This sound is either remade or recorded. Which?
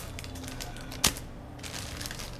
recorded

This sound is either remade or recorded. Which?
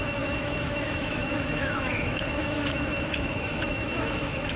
remade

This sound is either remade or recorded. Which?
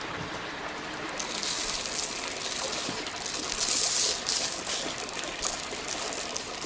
recorded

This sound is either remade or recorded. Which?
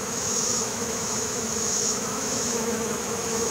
remade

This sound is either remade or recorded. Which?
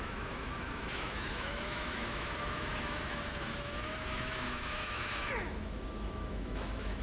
remade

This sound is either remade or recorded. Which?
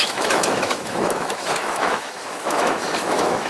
remade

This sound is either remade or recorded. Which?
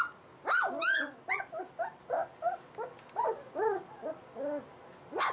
recorded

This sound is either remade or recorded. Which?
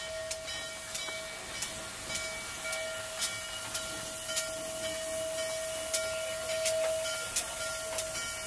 recorded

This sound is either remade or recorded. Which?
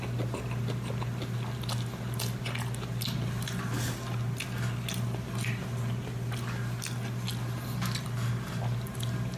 recorded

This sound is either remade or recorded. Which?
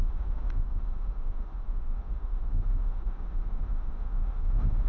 remade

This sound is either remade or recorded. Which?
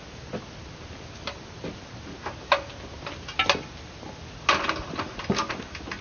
recorded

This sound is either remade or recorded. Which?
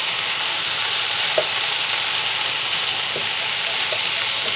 recorded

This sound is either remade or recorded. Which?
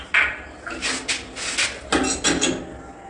recorded